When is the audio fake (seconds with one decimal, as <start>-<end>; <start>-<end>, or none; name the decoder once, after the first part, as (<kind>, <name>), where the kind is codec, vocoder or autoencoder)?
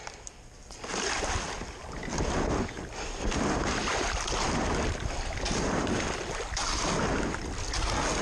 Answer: 0.0-1.3 (vocoder, BigVGAN v2)